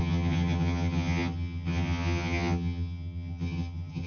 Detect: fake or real fake